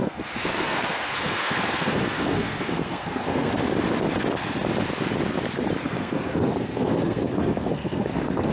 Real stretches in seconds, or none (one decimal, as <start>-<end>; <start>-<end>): 3.5-5.8